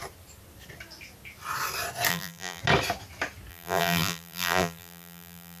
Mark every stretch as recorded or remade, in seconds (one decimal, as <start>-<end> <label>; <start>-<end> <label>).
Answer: 0.0-2.1 recorded; 2.1-2.6 remade; 2.6-3.5 recorded; 3.5-5.6 remade